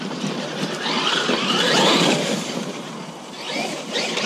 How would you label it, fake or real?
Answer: fake